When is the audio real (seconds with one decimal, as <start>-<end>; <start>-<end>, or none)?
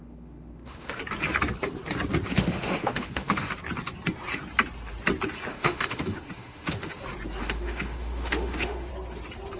1.0-2.3; 3.5-5.5; 7.0-7.4; 8.9-9.6